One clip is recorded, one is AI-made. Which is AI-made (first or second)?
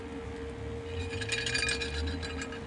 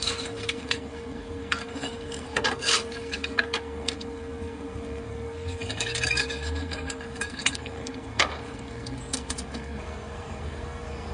second